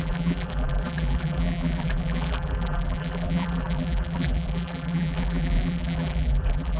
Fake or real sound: fake